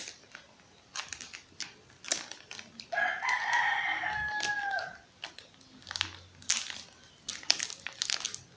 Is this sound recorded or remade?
recorded